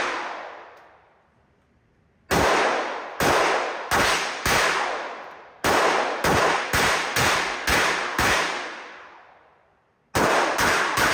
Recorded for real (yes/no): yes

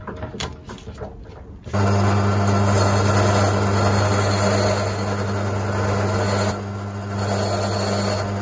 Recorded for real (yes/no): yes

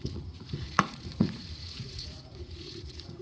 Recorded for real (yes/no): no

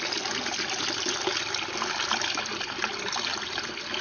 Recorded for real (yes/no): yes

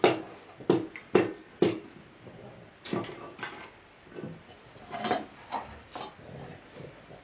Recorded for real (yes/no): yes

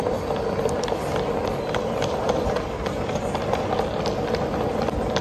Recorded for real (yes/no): yes